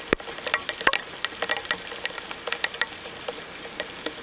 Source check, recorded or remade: recorded